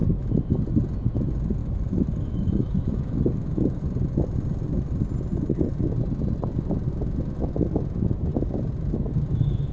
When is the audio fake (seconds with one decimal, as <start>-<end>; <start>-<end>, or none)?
0.0-0.5; 1.6-3.8